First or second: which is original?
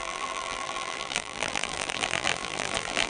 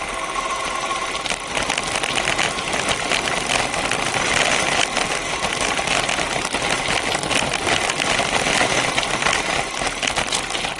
second